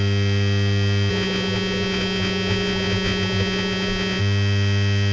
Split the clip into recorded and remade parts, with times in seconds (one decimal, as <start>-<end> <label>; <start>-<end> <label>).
0.0-1.1 recorded; 1.1-4.2 remade; 4.2-5.1 recorded